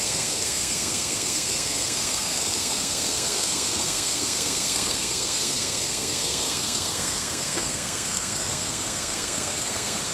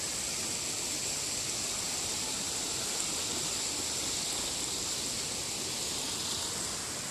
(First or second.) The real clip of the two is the second